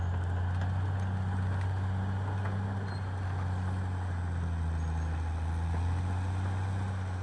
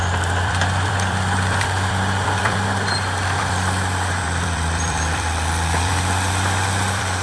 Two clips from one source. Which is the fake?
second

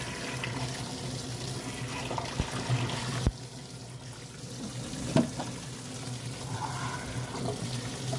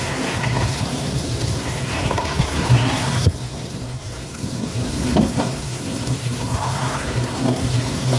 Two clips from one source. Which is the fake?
second